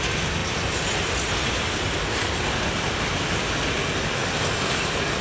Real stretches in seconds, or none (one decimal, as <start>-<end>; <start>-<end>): 0.0-5.2

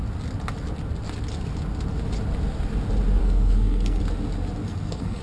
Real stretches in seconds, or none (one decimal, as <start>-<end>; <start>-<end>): 0.0-3.2; 4.0-4.6

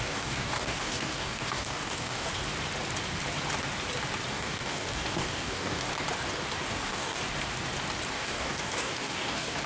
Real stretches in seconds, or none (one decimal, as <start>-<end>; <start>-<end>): 2.3-4.3; 5.9-6.7; 7.2-8.1

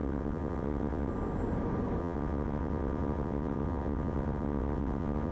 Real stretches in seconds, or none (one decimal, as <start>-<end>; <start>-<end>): 1.1-2.0

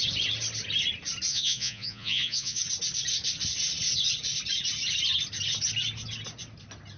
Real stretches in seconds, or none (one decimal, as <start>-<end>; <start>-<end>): 0.0-1.3; 2.6-7.0

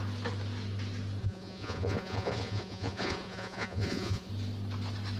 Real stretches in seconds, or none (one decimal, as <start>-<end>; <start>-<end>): 0.0-1.2; 4.3-5.2

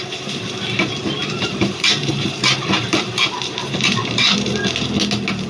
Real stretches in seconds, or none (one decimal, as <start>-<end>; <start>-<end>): 0.0-1.2; 4.5-5.5

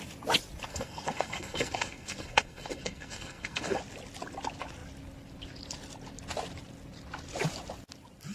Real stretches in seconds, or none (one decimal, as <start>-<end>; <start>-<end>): 0.0-0.7; 3.8-8.3